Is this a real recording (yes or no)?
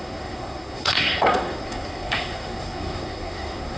no